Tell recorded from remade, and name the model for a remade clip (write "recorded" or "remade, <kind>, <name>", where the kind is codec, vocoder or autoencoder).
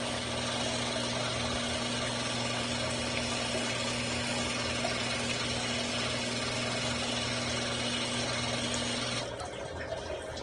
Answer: recorded